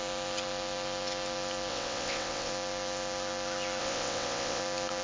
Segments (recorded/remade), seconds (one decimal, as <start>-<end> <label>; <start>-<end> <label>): 0.0-1.7 recorded; 1.7-2.5 remade; 2.5-3.8 recorded; 3.8-4.6 remade; 4.6-5.0 recorded